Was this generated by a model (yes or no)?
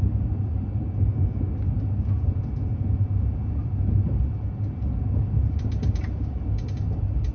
no